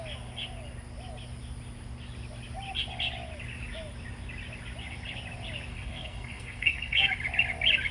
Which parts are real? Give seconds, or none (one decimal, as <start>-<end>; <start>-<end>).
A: 0.0-5.7; 7.1-7.9